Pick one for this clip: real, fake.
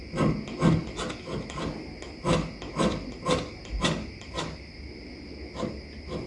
real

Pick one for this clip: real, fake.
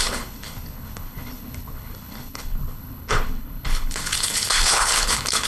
fake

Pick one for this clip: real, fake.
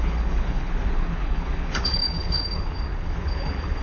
fake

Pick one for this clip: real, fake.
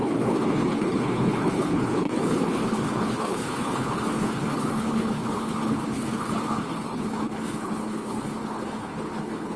fake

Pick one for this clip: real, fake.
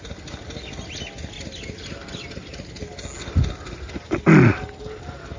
real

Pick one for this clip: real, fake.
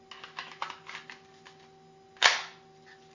real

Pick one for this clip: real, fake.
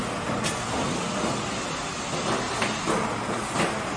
real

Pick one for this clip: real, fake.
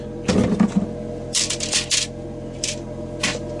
real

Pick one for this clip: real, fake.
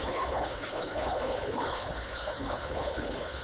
fake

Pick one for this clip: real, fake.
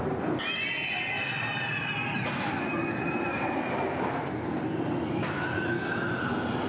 real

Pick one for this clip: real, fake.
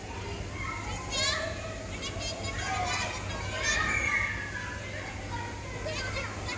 real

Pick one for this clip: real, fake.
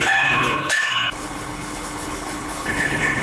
fake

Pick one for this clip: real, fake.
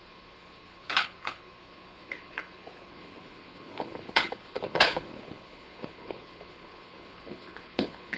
fake